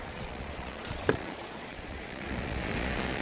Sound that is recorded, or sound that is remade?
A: remade